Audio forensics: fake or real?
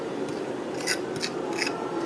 real